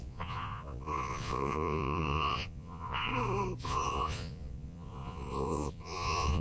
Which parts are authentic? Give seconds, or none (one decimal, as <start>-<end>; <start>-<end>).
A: 3.1-3.6